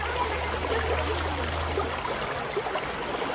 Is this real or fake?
real